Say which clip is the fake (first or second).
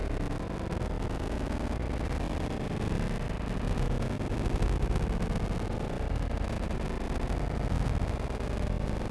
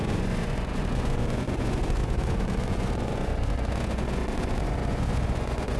second